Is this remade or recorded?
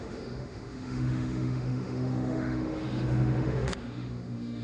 remade